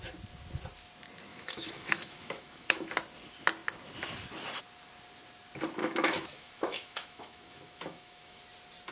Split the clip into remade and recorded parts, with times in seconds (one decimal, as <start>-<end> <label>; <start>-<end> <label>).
0.0-1.3 recorded; 1.3-2.9 remade; 2.9-5.8 recorded; 5.8-8.4 remade; 8.4-8.9 recorded